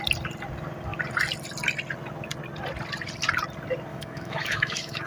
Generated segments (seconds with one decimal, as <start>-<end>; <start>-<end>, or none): 3.9-5.1